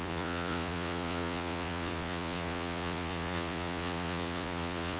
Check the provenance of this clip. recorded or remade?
remade